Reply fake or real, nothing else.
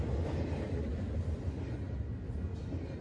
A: real